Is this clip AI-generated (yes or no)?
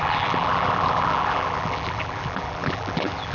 yes